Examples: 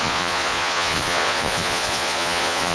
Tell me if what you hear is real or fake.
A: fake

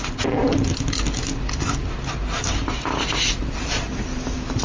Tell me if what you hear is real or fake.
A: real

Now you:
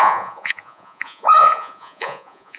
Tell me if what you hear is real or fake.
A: fake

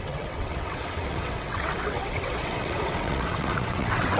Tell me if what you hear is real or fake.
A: fake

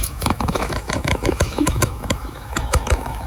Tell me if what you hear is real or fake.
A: fake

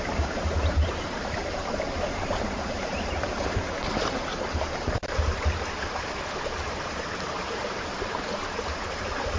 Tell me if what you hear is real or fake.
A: fake